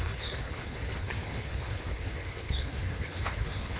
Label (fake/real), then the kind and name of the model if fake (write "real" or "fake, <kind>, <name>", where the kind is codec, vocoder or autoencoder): fake, codec, HILCodec